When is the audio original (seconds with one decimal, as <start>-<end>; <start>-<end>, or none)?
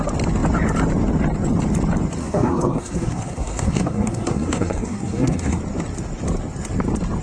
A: 0.0-2.2; 5.6-7.2